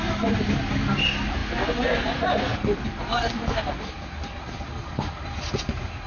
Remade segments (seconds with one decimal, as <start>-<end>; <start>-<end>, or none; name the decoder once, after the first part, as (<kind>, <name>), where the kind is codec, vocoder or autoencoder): none